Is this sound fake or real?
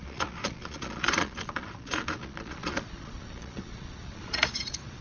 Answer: fake